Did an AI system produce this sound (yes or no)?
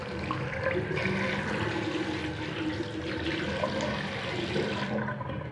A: no